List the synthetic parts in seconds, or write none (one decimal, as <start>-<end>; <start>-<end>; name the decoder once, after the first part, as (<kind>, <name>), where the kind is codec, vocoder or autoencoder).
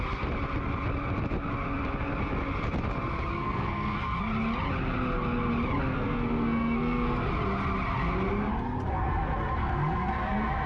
3.3-4.2 (codec, SNAC); 5.9-7.3; 9.6-10.1